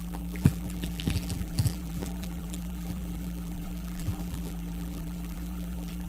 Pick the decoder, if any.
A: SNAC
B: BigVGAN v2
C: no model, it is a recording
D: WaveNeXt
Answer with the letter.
B